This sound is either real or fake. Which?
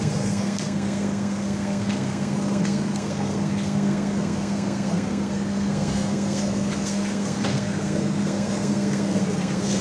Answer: fake